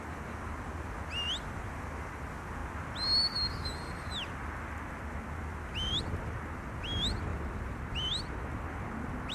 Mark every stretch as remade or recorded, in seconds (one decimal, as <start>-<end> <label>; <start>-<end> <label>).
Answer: 0.0-7.3 recorded; 7.3-7.9 remade; 7.9-9.3 recorded

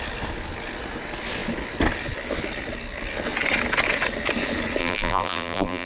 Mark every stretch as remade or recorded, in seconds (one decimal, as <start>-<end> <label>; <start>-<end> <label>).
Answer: 0.0-4.8 recorded; 4.8-5.9 remade

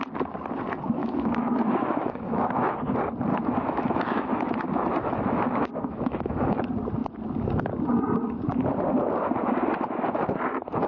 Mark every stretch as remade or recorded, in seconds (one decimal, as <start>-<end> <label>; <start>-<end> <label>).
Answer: 0.0-1.0 recorded; 1.0-2.7 remade; 2.7-3.3 recorded; 3.3-6.6 remade; 6.6-10.9 recorded